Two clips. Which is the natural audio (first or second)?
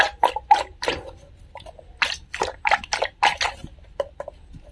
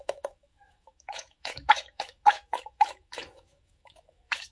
first